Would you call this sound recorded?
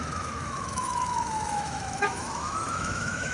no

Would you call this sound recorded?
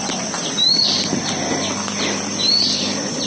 yes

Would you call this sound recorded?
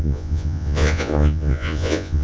no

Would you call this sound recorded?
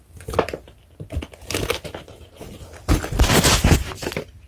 yes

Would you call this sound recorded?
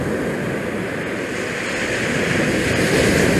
yes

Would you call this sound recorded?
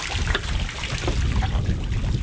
yes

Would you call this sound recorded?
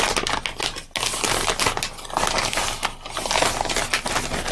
yes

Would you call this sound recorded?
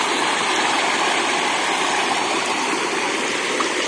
yes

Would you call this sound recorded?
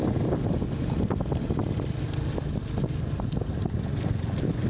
yes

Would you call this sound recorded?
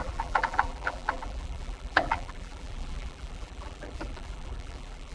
no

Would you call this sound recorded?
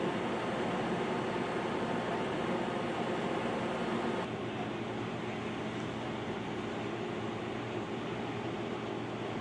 yes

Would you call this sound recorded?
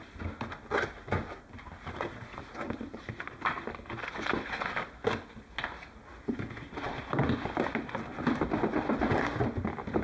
yes